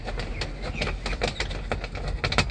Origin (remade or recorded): recorded